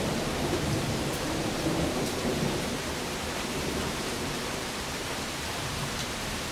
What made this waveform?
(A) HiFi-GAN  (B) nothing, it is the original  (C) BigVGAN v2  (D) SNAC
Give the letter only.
C